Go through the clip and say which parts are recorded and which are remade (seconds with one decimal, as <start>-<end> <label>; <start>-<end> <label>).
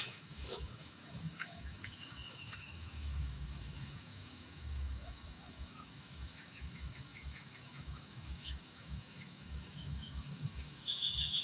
0.0-11.4 remade